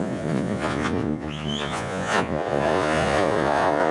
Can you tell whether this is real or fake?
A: fake